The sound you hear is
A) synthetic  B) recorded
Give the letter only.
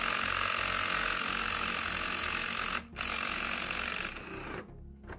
B